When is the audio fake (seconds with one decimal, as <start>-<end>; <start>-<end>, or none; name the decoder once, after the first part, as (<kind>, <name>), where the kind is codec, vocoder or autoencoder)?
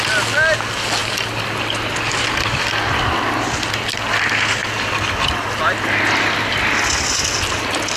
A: none